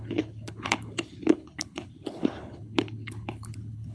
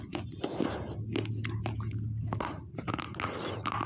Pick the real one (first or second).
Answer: second